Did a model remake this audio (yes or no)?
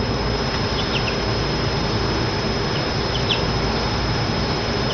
no